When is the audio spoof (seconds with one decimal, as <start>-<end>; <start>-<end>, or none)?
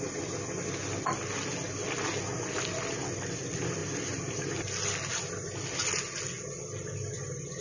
none